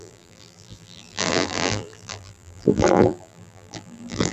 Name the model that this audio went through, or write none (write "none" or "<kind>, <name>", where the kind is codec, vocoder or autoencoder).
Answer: vocoder, BigVGAN v2